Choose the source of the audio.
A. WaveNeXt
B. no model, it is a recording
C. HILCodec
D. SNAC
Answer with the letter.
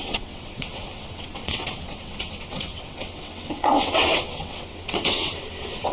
A